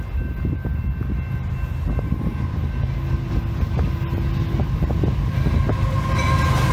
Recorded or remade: recorded